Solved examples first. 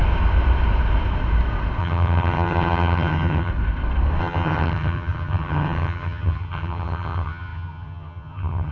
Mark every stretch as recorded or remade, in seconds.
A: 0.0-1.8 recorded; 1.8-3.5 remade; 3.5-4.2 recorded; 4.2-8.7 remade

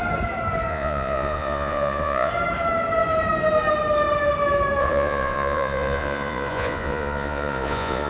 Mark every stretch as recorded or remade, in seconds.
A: 0.0-0.7 recorded; 0.7-2.3 remade; 2.3-4.8 recorded; 4.8-8.1 remade

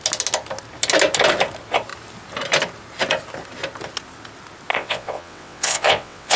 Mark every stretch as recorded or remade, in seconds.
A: 0.0-4.7 recorded; 4.7-6.4 remade

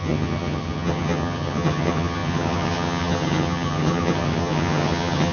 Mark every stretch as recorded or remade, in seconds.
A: 0.0-5.3 remade

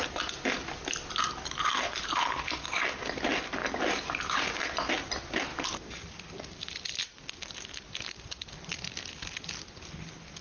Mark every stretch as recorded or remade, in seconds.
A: 0.0-10.4 recorded

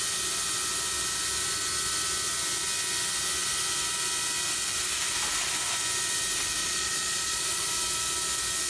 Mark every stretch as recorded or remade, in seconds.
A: 0.0-6.6 recorded; 6.6-7.7 remade; 7.7-8.7 recorded